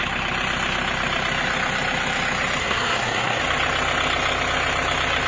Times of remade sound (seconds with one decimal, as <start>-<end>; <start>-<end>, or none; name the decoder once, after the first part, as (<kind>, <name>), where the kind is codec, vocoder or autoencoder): 2.6-3.4 (codec, SNAC)